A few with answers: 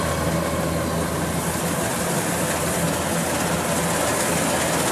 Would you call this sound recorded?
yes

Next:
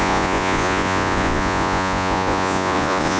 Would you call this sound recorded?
no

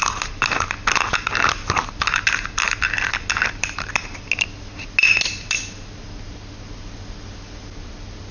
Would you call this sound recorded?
yes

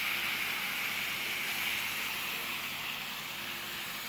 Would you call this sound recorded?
yes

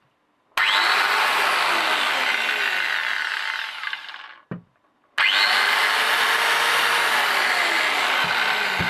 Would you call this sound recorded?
yes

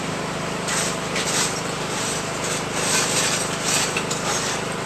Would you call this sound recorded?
no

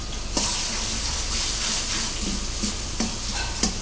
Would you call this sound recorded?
yes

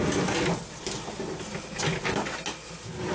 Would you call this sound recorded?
yes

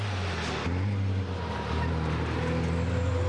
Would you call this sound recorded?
yes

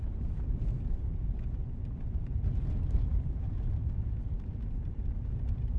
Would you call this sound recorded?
no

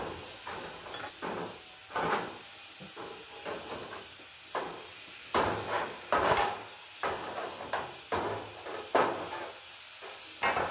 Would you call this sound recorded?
yes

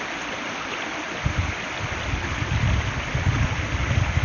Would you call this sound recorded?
yes